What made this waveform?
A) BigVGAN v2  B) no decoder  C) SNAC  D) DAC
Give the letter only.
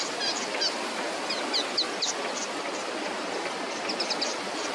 B